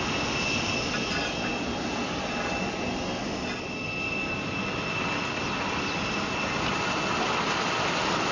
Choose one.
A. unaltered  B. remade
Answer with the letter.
A